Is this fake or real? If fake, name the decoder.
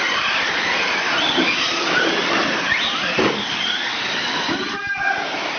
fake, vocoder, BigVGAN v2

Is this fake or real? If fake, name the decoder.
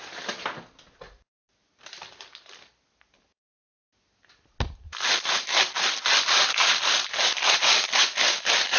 real